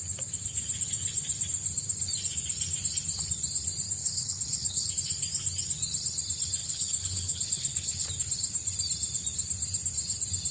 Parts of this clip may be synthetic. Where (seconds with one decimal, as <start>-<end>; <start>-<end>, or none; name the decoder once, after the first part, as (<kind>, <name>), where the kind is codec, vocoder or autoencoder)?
4.0-4.9 (codec, HILCodec); 6.6-8.1